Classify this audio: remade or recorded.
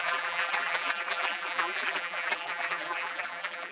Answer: remade